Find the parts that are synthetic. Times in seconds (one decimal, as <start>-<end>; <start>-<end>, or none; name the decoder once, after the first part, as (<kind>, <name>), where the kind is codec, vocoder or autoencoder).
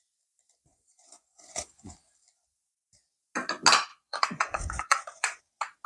0.7-1.9 (vocoder, Vocos); 3.9-5.4